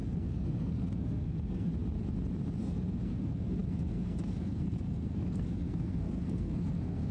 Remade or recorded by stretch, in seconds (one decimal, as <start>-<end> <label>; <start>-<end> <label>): 0.0-1.7 remade; 1.7-2.6 recorded; 2.6-7.1 remade